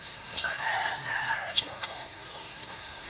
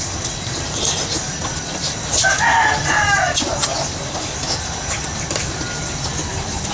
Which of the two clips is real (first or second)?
second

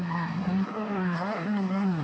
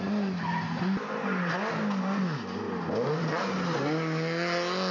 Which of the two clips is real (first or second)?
second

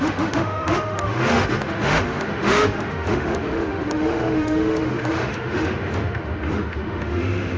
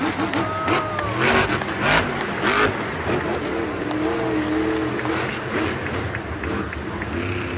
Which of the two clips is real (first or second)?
second